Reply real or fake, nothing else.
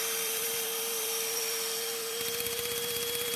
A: fake